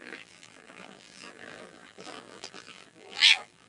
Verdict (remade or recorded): remade